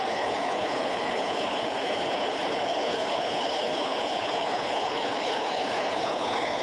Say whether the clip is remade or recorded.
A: remade